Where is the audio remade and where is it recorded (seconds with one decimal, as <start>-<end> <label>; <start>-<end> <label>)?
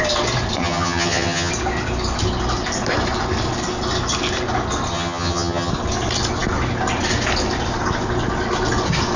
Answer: 0.0-0.6 recorded; 0.6-1.5 remade; 1.5-4.9 recorded; 4.9-5.7 remade; 5.7-9.2 recorded